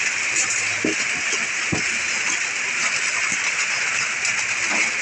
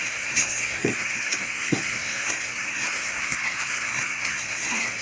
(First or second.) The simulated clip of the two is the second